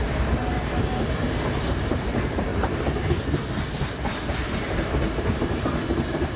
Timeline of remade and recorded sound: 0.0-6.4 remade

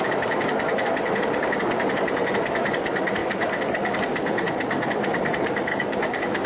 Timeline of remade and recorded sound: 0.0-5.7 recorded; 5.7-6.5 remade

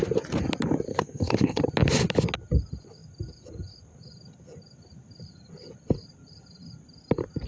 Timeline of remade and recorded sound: 0.0-0.9 recorded; 0.9-1.6 remade; 1.6-7.5 recorded

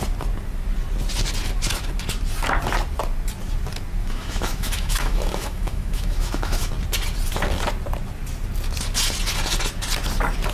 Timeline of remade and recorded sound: 0.0-4.0 recorded; 4.0-6.7 remade; 6.7-10.5 recorded